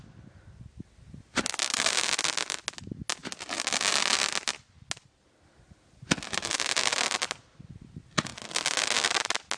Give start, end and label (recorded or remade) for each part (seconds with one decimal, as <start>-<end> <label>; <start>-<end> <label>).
0.0-3.2 recorded; 3.2-3.9 remade; 3.9-6.9 recorded; 6.9-7.9 remade; 7.9-9.6 recorded